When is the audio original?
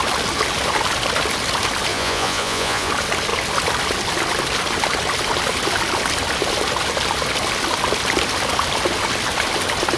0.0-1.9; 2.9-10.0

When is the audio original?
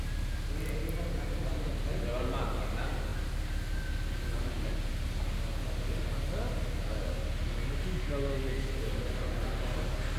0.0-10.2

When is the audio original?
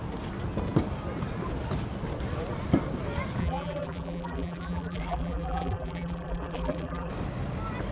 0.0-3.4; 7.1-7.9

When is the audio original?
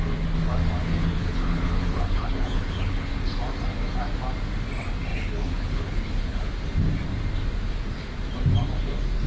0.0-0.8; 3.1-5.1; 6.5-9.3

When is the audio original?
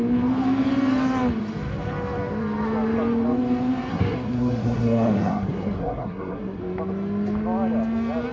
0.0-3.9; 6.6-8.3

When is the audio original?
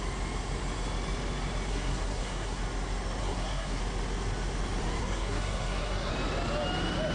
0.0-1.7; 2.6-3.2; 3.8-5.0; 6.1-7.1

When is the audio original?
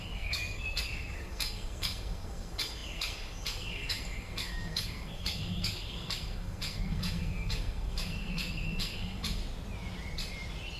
9.4-10.8